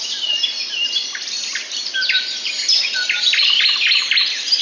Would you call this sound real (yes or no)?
yes